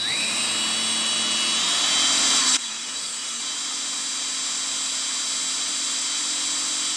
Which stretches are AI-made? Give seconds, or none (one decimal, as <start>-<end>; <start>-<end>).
2.4-3.4